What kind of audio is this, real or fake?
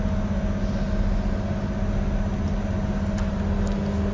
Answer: real